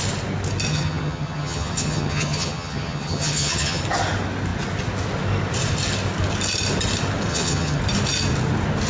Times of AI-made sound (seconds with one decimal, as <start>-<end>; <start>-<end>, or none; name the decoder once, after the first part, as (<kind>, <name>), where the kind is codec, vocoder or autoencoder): 0.7-3.8 (vocoder, HiFi-GAN); 7.3-7.8